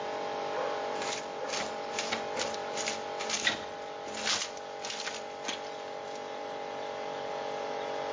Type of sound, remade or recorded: remade